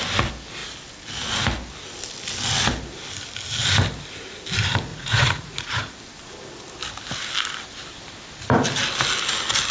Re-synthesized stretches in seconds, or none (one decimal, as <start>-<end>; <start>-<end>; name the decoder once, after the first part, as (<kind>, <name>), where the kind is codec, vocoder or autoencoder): 4.9-5.8 (vocoder, Vocos)